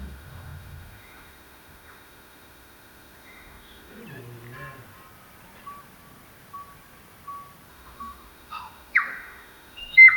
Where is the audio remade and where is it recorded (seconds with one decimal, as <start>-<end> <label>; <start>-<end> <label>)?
0.0-4.0 remade; 4.0-7.7 recorded; 7.7-10.2 remade